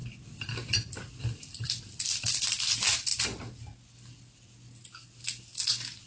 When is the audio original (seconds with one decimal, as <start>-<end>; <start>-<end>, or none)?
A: 2.3-6.1